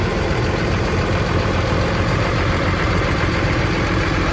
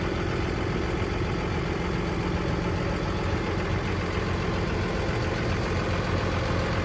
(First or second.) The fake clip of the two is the first